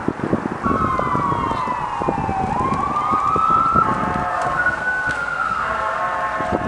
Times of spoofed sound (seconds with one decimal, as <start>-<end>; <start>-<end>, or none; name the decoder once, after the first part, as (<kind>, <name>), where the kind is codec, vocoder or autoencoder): 4.3-6.0 (codec, SNAC)